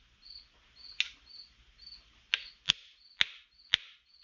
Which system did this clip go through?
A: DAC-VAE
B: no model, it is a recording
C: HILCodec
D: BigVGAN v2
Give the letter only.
B